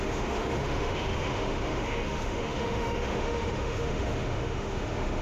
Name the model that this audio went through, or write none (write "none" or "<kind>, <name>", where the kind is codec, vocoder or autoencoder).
autoencoder, DAC-VAE